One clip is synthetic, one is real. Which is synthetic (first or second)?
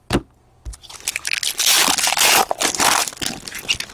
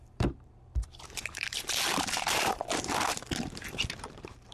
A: second